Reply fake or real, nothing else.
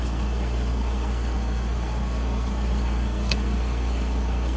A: fake